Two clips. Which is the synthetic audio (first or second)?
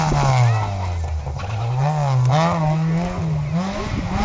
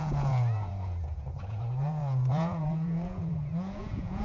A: second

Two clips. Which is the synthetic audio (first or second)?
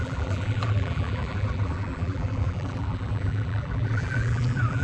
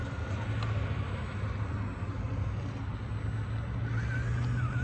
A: first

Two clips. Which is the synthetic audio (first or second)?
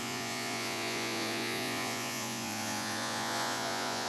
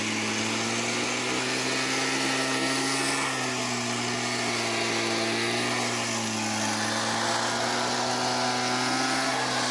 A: first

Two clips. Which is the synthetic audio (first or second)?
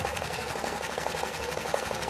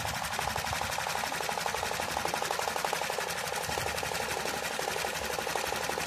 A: first